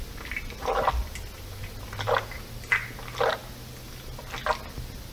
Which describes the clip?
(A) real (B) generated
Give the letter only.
A